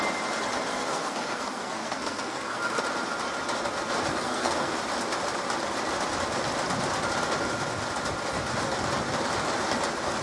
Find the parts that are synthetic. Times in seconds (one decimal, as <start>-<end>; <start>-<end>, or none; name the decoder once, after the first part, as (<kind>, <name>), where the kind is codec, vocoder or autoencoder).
0.7-2.8 (codec, SNAC); 4.1-4.7